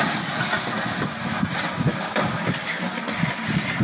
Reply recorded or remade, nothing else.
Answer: recorded